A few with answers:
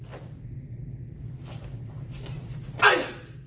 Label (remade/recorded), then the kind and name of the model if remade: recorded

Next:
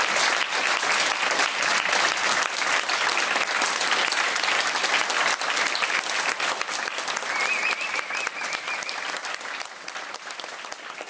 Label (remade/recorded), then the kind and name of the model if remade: recorded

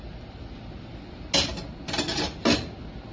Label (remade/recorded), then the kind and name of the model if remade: recorded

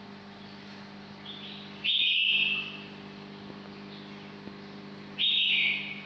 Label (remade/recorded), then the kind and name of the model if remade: recorded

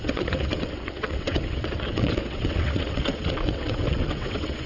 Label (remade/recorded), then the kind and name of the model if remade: remade, vocoder, WaveNeXt